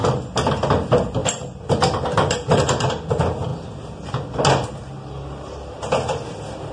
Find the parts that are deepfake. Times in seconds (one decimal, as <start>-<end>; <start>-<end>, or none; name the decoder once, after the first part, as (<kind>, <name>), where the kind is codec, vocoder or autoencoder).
none